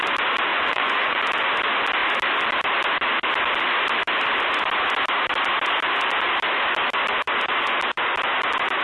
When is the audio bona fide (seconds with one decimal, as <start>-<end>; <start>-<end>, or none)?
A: 0.0-0.5; 1.2-8.8